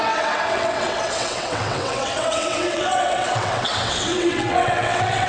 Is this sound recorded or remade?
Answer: remade